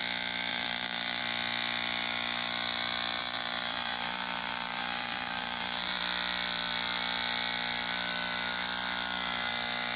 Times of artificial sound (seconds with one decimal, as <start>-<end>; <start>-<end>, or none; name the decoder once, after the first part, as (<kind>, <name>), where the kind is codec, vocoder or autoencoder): 0.5-1.2 (vocoder, BigVGAN v2); 3.2-6.0